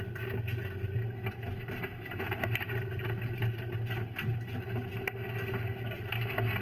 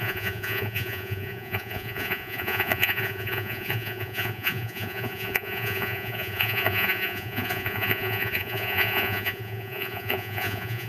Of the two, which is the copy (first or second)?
second